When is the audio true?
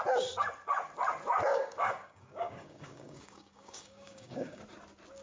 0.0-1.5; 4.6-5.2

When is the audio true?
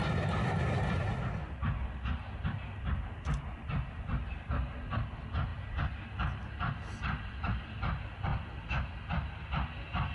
0.0-10.1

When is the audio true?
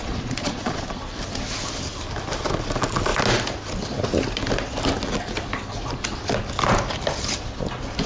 1.0-8.1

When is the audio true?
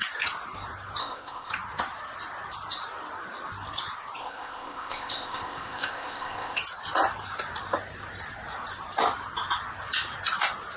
0.0-1.0; 1.5-4.2; 6.6-10.8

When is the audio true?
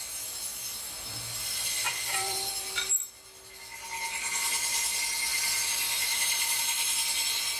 0.0-1.4; 2.5-5.3; 6.6-7.6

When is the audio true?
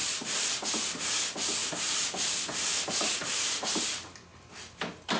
1.2-1.6; 3.8-5.2